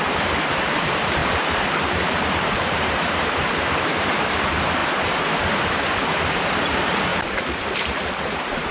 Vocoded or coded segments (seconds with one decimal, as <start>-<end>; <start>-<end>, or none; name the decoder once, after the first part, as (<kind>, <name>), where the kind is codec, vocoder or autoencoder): 0.0-7.1 (vocoder, BigVGAN v2); 7.6-8.7